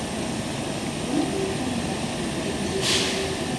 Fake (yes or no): no